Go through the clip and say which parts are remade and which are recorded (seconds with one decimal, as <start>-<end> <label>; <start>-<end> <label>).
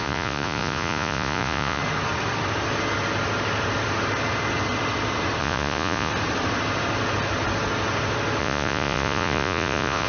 0.0-1.8 remade; 1.8-5.4 recorded; 5.4-6.1 remade; 6.1-8.4 recorded; 8.4-10.1 remade